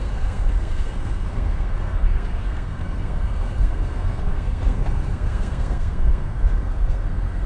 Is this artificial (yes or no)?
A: yes